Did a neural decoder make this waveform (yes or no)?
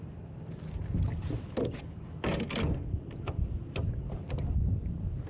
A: no